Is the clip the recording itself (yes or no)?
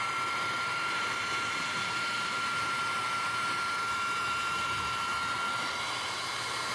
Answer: no